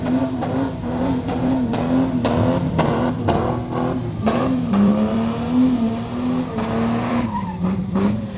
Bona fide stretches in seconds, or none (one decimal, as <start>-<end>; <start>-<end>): 1.7-2.7; 3.6-4.1; 4.9-7.1